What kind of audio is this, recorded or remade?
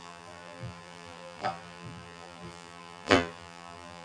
remade